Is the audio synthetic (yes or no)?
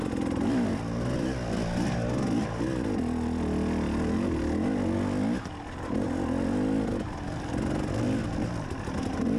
no